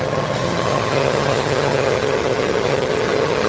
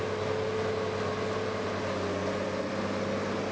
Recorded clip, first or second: second